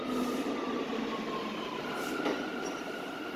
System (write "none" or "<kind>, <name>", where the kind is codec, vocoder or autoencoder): none